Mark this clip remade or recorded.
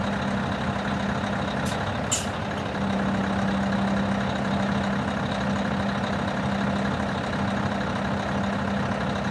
recorded